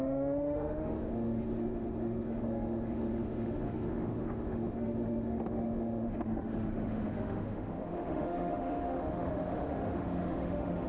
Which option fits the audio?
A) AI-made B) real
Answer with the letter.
A